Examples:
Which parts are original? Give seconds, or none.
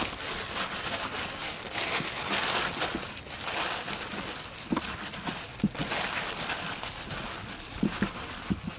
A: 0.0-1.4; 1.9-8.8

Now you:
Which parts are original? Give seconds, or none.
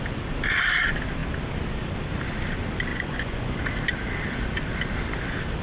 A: 0.0-2.9; 3.6-5.6